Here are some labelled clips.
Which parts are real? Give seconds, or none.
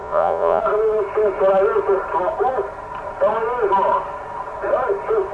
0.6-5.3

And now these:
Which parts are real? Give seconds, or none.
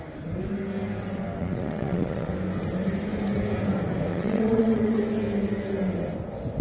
0.0-1.4; 2.3-4.1; 5.0-6.6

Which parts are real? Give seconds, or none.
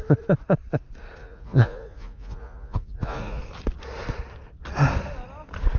0.0-1.2; 3.4-5.8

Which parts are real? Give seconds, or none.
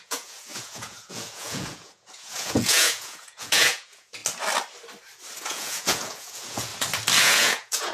4.2-5.4; 6.7-7.2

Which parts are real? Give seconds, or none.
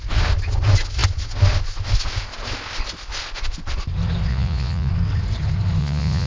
0.0-4.3; 4.9-5.8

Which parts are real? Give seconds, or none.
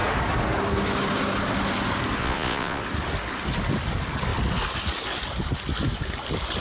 0.0-2.2; 2.8-6.6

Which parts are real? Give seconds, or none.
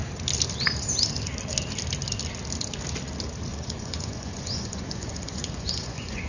0.0-3.5